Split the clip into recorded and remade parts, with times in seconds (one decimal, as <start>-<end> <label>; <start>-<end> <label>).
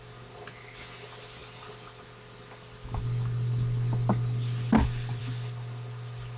0.0-6.4 recorded